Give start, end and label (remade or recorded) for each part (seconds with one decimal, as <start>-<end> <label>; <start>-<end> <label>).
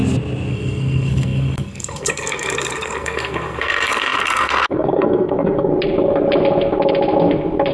0.0-0.5 recorded; 0.5-5.7 remade; 5.7-7.7 recorded